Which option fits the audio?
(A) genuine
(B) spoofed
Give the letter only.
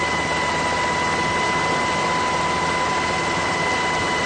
A